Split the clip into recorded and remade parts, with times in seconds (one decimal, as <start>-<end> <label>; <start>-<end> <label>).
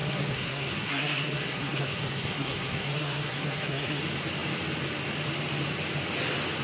0.0-4.0 remade; 4.0-6.6 recorded